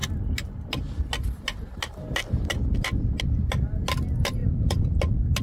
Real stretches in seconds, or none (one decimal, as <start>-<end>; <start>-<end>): 0.0-4.4; 5.0-5.4